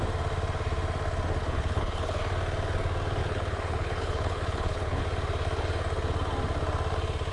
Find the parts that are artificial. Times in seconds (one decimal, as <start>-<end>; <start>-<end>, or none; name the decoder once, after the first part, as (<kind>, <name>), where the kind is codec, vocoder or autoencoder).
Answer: 1.4-2.2 (codec, HILCodec); 3.2-5.0